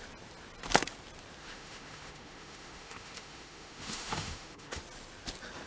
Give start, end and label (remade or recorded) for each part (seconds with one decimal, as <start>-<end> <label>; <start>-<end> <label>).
0.0-1.4 recorded; 1.4-4.8 remade; 4.8-5.7 recorded